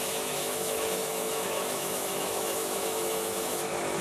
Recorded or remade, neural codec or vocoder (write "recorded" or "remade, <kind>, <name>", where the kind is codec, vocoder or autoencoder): remade, autoencoder, DAC-VAE